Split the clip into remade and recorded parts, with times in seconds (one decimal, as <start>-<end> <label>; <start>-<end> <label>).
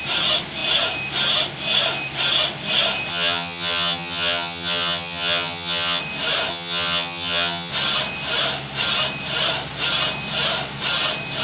0.0-3.1 recorded; 3.1-6.0 remade; 6.0-6.5 recorded; 6.5-7.7 remade; 7.7-11.4 recorded